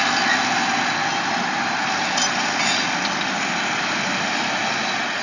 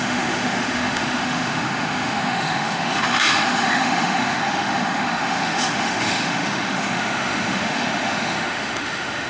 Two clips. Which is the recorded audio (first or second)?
first